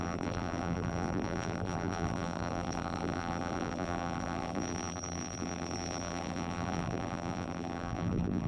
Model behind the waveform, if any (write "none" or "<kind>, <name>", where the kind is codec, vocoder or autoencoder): vocoder, BigVGAN v2